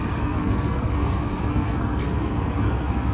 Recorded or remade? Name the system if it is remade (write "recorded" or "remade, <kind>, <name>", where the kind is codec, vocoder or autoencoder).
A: remade, codec, SNAC